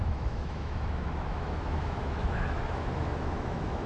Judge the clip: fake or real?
fake